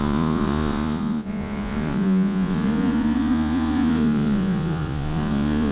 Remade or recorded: remade